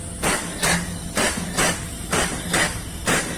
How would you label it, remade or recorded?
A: recorded